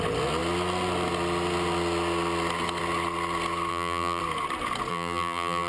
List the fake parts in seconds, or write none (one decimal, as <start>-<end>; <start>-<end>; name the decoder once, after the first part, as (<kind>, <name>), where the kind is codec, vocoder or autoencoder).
3.7-4.2 (vocoder, BigVGAN v2); 4.9-5.7